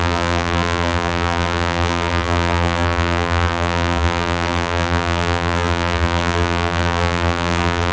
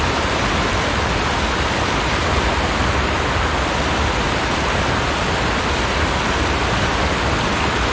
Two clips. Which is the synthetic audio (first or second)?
first